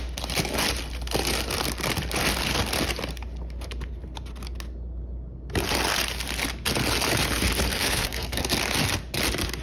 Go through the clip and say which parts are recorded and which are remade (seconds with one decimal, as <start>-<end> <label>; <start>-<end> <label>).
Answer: 0.0-7.7 recorded; 7.7-8.4 remade; 8.4-9.6 recorded